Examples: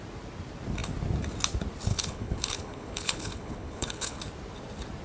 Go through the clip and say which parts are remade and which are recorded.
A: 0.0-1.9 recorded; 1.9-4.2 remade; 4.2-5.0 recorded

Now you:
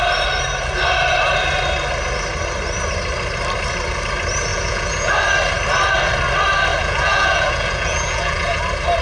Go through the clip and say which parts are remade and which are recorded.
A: 0.0-4.5 recorded; 4.5-5.1 remade; 5.1-6.7 recorded; 6.7-8.6 remade; 8.6-9.0 recorded